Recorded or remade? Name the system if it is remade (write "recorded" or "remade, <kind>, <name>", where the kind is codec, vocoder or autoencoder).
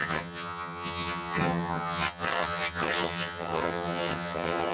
remade, vocoder, HiFi-GAN